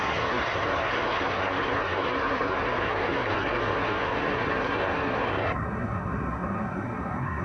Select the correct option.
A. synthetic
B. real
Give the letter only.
A